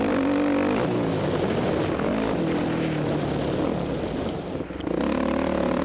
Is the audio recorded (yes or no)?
yes